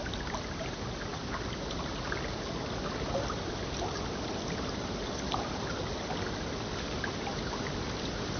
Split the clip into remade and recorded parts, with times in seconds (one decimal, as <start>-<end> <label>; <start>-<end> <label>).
0.0-8.4 recorded